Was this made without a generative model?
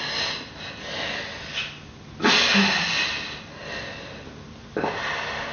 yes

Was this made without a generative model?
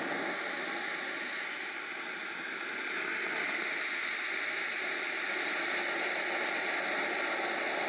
yes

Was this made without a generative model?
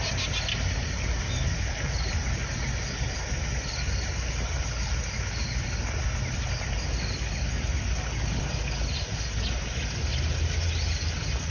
yes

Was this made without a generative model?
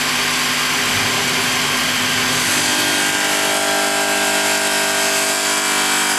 yes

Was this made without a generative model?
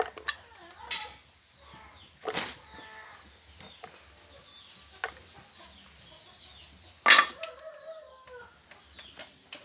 yes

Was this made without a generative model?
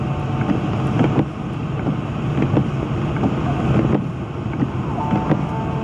yes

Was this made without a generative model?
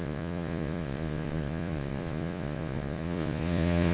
no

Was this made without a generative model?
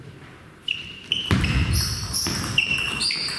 no